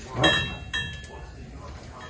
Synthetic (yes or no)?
no